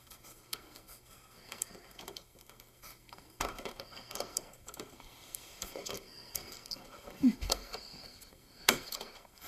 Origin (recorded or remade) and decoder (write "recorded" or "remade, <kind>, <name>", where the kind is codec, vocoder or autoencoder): remade, codec, SNAC